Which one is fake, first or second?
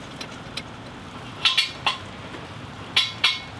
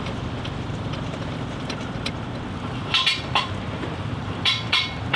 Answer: second